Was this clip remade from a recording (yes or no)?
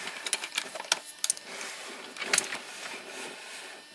no